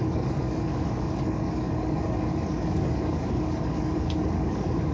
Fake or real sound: fake